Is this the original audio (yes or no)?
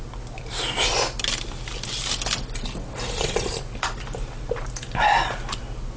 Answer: yes